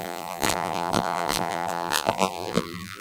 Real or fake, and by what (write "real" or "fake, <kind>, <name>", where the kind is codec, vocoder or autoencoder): fake, vocoder, BigVGAN v2